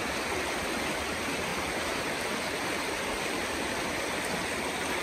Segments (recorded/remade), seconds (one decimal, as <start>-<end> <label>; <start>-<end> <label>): 0.0-1.5 recorded; 1.5-3.9 remade; 3.9-5.0 recorded